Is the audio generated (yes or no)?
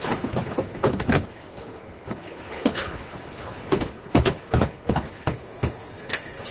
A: yes